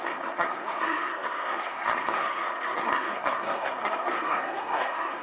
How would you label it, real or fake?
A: fake